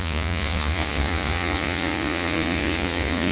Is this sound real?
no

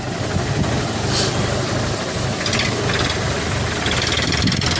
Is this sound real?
yes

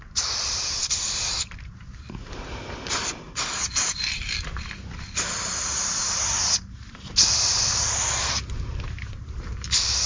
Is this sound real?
no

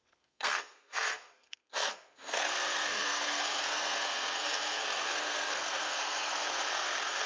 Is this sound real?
no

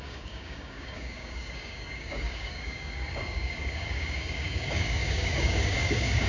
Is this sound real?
no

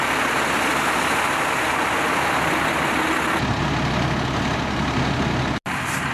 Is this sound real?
yes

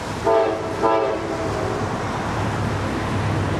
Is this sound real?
yes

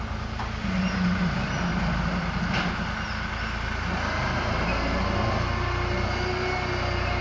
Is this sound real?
yes